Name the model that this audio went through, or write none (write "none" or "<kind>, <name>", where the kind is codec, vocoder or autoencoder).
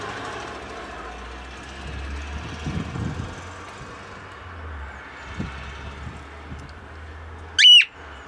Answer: none